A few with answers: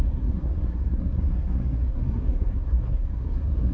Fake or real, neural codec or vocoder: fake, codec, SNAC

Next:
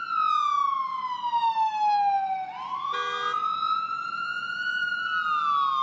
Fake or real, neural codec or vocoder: real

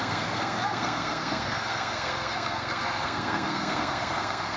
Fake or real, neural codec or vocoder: fake, codec, SNAC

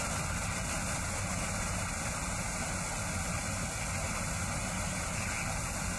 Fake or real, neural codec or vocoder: real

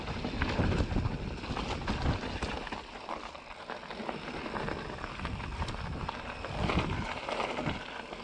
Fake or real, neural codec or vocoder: real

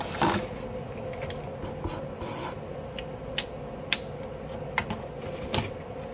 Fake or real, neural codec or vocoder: real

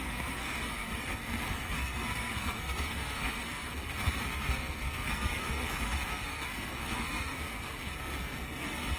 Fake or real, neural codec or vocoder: fake, codec, SNAC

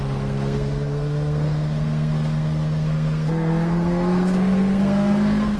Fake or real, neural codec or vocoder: fake, codec, SNAC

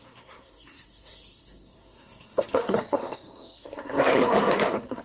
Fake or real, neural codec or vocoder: fake, codec, SNAC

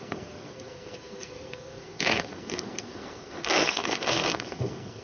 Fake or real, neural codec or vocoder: fake, codec, SNAC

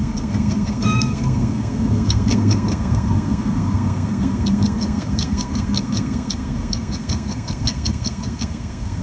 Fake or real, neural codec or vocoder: fake, codec, SNAC